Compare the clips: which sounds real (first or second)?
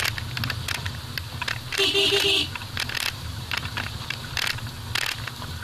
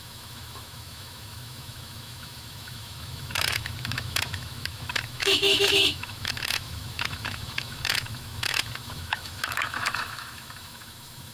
first